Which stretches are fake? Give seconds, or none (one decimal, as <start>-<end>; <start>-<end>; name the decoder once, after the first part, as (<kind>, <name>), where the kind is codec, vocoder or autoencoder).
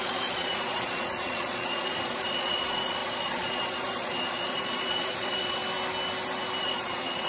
0.0-5.6 (vocoder, Vocos); 6.6-7.3